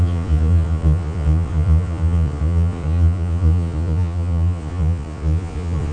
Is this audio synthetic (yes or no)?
yes